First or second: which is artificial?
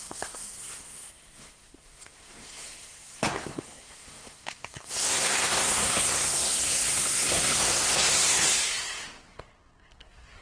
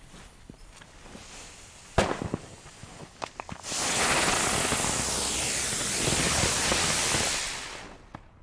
first